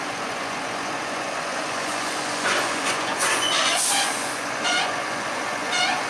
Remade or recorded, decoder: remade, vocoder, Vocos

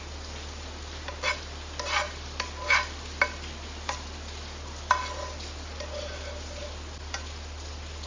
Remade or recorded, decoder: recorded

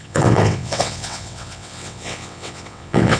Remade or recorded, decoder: remade, vocoder, WaveNeXt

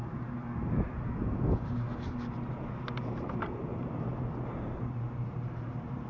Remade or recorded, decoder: remade, vocoder, BigVGAN v2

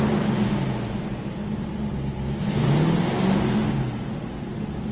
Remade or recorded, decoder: recorded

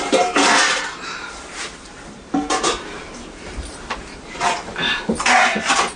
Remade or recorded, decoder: remade, vocoder, BigVGAN v2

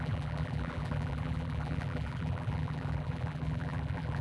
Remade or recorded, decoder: remade, vocoder, BigVGAN v2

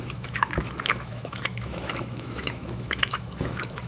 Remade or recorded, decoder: remade, autoencoder, DAC-VAE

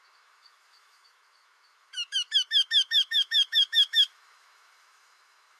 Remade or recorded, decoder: remade, autoencoder, DAC-VAE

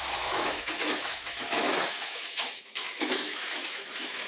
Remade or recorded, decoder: remade, autoencoder, DAC-VAE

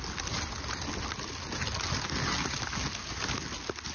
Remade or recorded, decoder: recorded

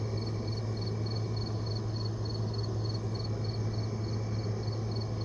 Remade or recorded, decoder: recorded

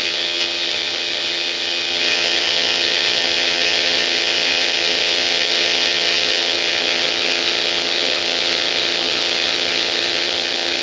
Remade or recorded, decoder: remade, vocoder, HiFi-GAN